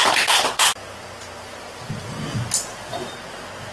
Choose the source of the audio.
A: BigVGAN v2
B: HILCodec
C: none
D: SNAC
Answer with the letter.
C